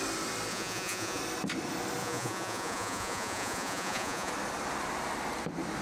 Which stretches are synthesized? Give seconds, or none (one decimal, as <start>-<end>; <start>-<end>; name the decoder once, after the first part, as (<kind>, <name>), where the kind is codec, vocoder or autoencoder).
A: 0.5-1.2 (vocoder, Vocos); 2.0-4.3